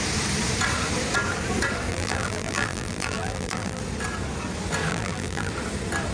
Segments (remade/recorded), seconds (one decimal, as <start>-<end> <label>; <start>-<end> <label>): 0.0-1.9 recorded; 1.9-3.8 remade; 3.8-4.9 recorded; 4.9-5.5 remade; 5.5-6.1 recorded

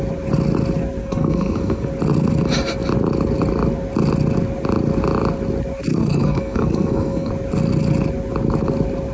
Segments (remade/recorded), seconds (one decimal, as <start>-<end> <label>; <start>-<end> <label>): 0.0-1.0 recorded; 1.0-1.9 remade; 1.9-5.9 recorded; 5.9-7.3 remade; 7.3-9.1 recorded